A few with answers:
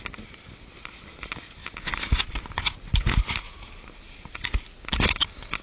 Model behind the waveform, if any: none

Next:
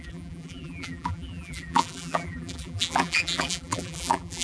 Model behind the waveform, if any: vocoder, BigVGAN v2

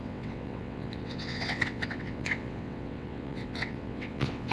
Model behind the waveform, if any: vocoder, WaveNeXt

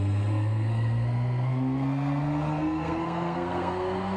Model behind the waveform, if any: codec, SNAC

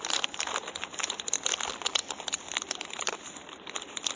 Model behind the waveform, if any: none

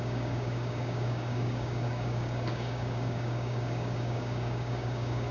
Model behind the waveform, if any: codec, DAC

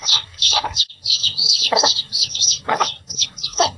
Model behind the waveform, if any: codec, SNAC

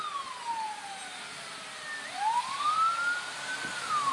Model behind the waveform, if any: none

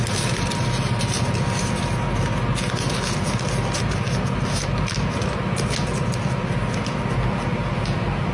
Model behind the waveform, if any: none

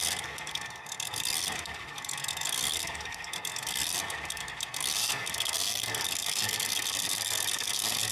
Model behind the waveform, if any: codec, SNAC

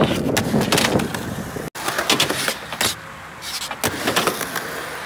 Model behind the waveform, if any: none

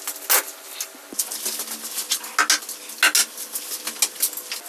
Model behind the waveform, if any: none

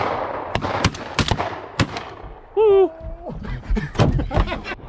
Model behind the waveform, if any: none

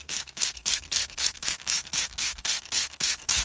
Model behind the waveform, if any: codec, SNAC